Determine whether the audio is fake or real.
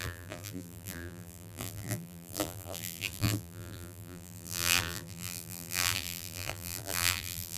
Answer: fake